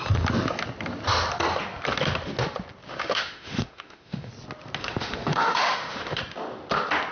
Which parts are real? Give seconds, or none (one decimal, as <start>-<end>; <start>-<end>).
0.0-2.9; 4.3-4.8; 6.2-7.1

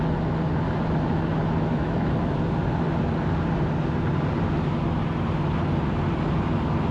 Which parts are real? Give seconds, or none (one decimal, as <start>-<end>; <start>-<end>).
0.0-1.4; 2.1-6.9